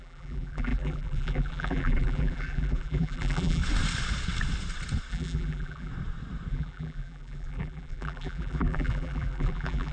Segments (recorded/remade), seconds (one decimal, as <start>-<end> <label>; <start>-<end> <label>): 0.0-3.6 remade; 3.6-5.1 recorded; 5.1-5.9 remade; 5.9-6.5 recorded; 6.5-9.9 remade